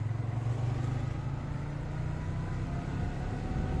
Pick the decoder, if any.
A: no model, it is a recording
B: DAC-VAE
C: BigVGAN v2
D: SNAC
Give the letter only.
A